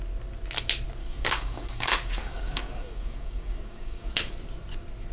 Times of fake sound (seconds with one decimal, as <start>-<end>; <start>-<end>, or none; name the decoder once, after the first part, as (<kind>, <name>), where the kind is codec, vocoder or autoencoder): 1.0-4.1 (codec, DAC)